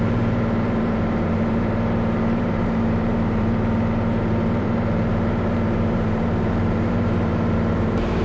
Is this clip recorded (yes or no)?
no